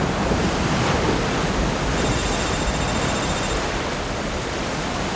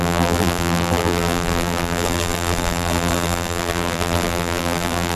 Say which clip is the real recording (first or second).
first